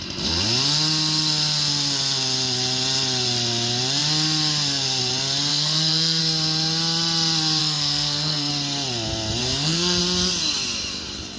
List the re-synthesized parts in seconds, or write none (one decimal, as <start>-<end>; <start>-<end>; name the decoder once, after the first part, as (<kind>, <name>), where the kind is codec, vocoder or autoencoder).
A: 5.5-6.2 (codec, SNAC); 7.6-8.5; 9.4-10.0